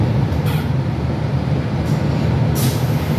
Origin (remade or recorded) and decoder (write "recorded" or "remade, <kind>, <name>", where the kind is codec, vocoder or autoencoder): recorded